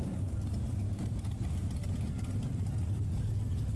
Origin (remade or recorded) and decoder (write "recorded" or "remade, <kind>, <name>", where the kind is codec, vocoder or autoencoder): recorded